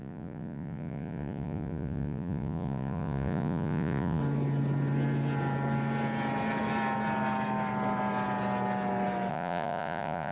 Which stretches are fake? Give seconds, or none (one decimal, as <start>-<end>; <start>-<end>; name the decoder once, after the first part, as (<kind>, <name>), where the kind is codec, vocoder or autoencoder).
0.0-4.2 (vocoder, Vocos); 9.3-10.3